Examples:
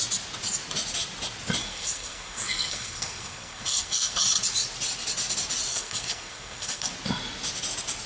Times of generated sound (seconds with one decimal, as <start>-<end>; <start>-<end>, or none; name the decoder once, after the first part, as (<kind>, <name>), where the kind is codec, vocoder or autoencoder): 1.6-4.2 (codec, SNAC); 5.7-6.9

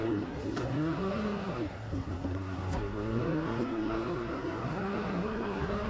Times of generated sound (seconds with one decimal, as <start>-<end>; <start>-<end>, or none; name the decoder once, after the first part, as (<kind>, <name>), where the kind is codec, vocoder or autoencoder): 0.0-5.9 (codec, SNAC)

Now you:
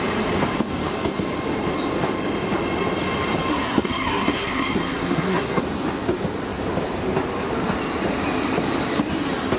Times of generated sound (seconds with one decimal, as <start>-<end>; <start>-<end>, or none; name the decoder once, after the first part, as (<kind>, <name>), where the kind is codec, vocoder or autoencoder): 3.5-5.6 (codec, SNAC)

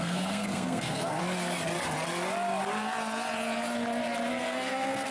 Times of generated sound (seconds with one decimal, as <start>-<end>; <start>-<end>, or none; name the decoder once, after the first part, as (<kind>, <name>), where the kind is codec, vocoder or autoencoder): 0.0-1.2 (codec, SNAC); 4.3-5.1

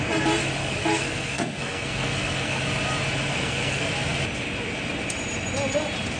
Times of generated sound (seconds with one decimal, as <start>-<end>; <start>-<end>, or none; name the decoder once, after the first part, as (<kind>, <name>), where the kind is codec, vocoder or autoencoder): 0.6-2.6 (codec, SNAC); 3.3-3.9

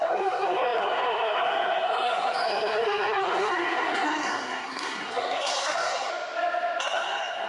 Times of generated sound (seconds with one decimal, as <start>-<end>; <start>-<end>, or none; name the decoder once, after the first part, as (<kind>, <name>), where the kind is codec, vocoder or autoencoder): 0.0-6.1 (codec, SNAC); 6.8-7.5

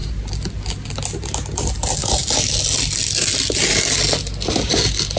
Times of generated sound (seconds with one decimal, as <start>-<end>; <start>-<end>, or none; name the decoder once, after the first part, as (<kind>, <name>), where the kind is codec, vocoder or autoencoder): none